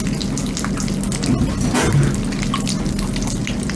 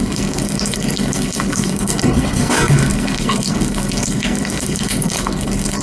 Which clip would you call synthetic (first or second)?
second